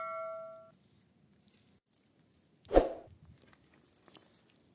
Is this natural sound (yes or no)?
yes